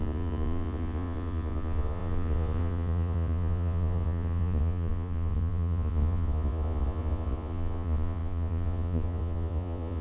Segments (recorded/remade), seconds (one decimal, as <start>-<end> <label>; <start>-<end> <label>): 0.0-10.0 remade